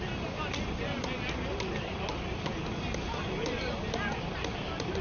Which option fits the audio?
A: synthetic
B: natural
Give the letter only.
B